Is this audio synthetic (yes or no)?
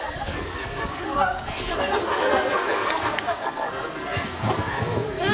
yes